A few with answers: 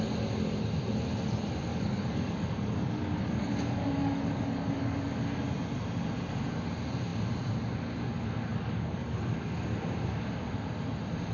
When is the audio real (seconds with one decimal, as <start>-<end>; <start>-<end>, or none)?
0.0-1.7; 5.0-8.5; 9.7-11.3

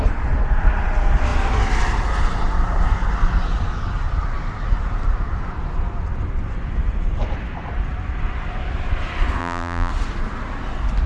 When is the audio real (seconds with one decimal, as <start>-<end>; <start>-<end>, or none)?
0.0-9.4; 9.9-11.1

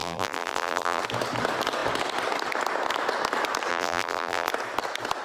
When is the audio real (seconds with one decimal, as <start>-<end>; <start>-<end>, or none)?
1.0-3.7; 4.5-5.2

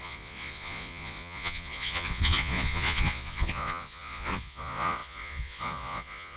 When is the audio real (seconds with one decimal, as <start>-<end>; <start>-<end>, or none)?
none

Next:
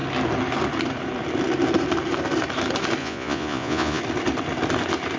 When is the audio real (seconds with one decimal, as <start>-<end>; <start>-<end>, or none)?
0.0-3.0; 4.0-5.2